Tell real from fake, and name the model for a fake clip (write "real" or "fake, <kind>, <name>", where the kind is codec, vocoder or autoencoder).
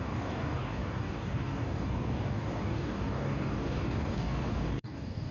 fake, codec, DAC